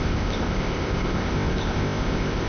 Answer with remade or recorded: remade